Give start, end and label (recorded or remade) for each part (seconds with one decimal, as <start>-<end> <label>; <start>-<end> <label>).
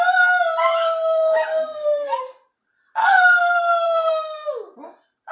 0.0-0.6 recorded; 0.6-2.2 remade; 2.2-3.0 recorded; 3.0-4.1 remade; 4.1-5.3 recorded